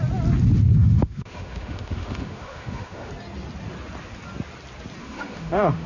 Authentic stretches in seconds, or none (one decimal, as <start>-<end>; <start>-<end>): 0.0-0.8; 3.1-5.0

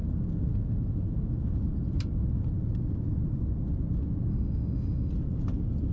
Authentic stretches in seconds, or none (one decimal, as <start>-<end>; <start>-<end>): 0.0-4.3; 5.1-5.9

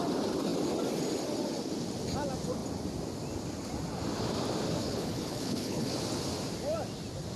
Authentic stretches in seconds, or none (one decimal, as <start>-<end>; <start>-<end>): 0.0-4.8; 5.9-7.4

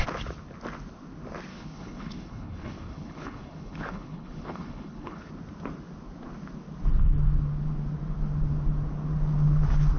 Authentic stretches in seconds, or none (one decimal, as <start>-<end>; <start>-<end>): 0.0-1.5; 5.3-10.0

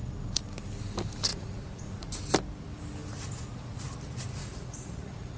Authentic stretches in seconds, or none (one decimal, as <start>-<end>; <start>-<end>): 0.0-1.3; 2.1-4.4

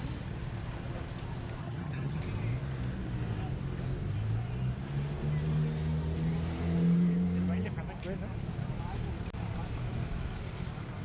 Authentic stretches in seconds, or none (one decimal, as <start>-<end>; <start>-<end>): 0.0-1.6; 2.2-11.0

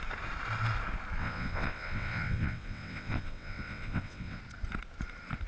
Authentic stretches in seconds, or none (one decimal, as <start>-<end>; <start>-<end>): 0.0-1.2; 4.4-5.5